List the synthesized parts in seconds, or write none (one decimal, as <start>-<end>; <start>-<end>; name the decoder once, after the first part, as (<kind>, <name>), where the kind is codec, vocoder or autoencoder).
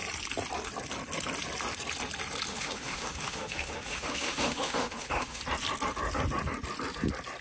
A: 2.5-5.4 (autoencoder, DAC-VAE)